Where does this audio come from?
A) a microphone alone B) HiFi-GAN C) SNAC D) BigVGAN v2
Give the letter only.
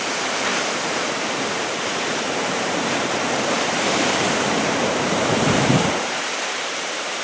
D